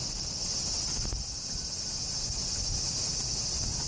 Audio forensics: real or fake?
real